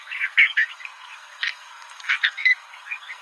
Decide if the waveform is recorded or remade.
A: remade